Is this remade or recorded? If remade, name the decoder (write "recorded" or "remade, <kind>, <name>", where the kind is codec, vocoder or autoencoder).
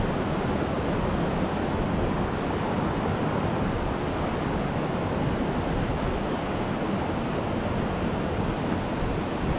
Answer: recorded